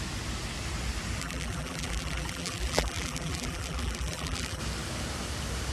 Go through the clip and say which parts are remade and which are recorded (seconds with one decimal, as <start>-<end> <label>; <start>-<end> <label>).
0.0-1.2 recorded; 1.2-4.6 remade; 4.6-5.7 recorded